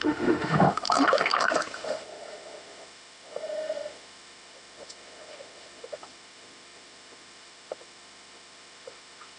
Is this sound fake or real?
fake